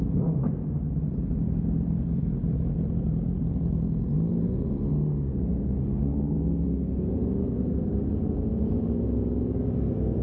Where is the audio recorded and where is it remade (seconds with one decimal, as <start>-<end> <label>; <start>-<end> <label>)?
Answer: 0.0-10.2 recorded